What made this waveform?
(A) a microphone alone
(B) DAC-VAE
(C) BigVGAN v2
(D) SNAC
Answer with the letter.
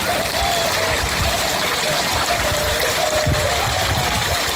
C